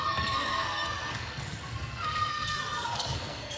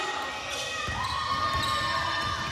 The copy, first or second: first